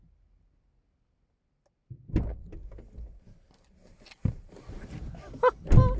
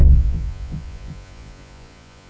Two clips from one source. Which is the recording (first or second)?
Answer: first